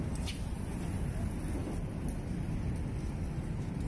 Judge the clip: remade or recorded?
recorded